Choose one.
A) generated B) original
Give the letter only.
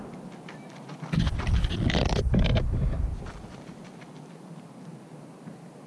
B